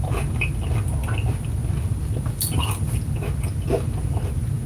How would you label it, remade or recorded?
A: recorded